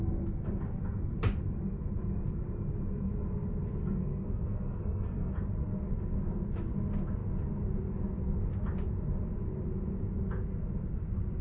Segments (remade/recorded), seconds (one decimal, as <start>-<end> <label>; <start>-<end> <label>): 0.0-3.8 recorded; 3.8-5.3 remade; 5.3-11.4 recorded